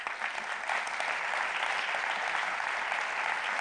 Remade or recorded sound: recorded